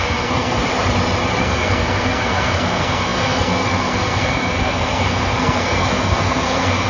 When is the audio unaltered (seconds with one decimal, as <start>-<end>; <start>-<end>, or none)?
0.6-1.4